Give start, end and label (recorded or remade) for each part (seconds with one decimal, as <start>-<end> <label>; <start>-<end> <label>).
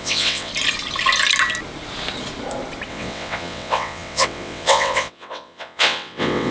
0.0-0.5 remade; 0.5-2.9 recorded; 2.9-6.5 remade